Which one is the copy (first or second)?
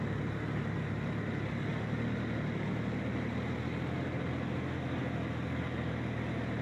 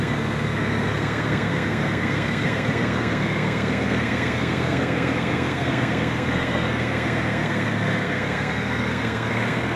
second